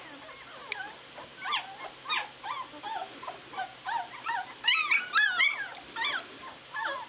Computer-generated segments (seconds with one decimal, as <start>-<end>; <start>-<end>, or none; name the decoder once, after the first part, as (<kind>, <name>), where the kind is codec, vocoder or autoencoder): none